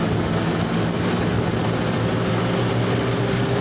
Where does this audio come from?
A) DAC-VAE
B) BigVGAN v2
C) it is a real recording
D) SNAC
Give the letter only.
C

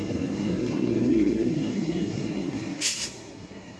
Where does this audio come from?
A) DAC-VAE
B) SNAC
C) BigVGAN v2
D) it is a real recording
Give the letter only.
B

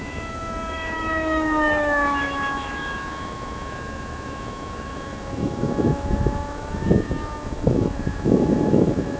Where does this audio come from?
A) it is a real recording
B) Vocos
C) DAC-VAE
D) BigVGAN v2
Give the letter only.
C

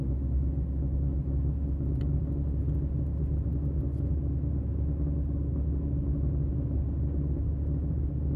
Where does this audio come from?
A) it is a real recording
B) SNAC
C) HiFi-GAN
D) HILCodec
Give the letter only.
A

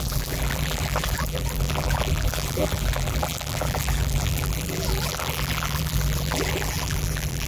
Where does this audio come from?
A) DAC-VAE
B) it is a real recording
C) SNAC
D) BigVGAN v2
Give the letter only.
D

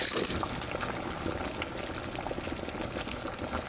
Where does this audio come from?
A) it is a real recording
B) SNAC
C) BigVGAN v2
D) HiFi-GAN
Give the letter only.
A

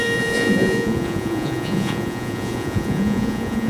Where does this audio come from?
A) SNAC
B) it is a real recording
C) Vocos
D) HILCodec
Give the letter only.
C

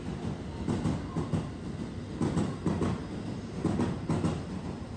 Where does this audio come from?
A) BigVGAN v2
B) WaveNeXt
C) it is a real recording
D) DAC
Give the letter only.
C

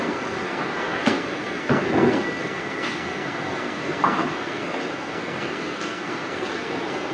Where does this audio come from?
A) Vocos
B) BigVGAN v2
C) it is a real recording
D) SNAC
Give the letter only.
D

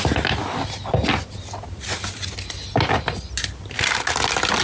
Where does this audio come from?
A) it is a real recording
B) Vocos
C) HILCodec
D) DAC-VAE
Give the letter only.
A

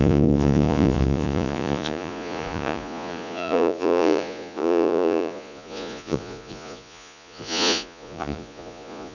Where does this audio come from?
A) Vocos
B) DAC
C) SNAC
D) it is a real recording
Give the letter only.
A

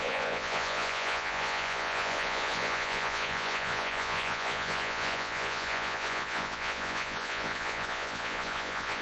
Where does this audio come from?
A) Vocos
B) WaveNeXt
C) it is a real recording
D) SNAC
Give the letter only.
A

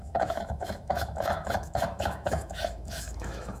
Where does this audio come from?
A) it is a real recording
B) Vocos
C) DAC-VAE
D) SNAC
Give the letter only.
C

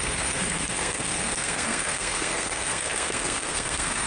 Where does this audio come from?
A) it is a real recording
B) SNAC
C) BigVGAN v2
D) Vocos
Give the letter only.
B